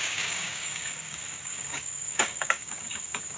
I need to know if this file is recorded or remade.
remade